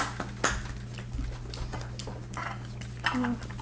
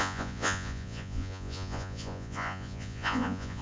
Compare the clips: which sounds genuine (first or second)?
first